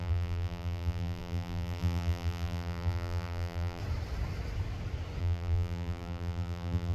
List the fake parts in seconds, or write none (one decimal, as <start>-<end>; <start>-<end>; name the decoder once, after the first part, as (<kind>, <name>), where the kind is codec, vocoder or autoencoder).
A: 0.0-3.8 (vocoder, BigVGAN v2); 5.2-6.9